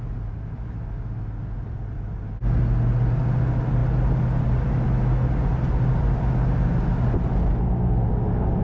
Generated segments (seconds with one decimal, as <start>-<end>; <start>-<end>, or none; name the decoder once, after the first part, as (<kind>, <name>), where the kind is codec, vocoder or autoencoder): none